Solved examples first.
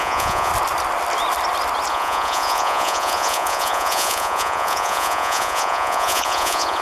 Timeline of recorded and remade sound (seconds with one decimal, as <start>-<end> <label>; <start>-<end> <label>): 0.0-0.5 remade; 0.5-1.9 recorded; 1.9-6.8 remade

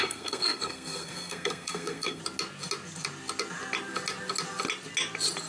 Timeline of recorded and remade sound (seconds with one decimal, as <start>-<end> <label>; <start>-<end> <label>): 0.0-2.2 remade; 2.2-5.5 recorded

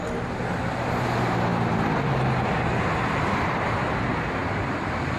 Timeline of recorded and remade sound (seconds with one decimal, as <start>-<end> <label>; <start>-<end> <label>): 0.0-1.5 recorded; 1.5-2.1 remade; 2.1-4.4 recorded; 4.4-5.2 remade

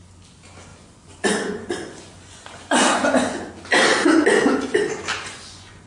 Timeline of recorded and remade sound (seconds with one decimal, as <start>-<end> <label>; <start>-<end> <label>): 0.0-0.7 recorded; 0.7-3.5 remade; 3.5-5.1 recorded; 5.1-5.9 remade

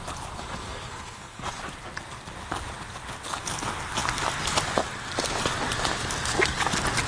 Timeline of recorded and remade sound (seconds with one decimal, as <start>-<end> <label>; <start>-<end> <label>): 0.0-0.6 recorded; 0.6-1.5 remade; 1.5-7.1 recorded